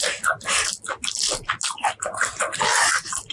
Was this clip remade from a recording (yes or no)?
no